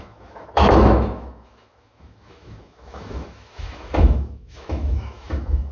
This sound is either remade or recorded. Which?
remade